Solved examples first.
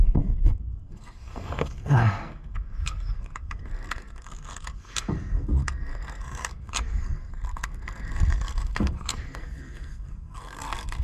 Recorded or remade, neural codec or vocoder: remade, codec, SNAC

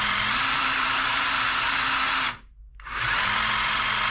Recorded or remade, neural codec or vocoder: remade, vocoder, BigVGAN v2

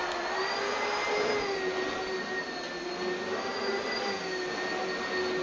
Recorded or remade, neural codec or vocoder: recorded